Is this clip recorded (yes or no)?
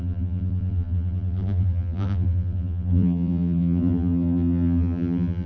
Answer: no